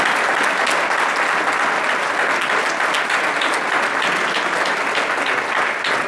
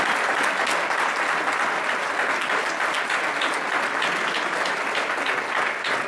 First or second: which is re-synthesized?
second